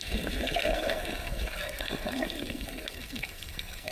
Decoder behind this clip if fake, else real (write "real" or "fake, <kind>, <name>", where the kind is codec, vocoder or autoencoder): fake, codec, SNAC